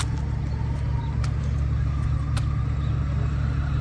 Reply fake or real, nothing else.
real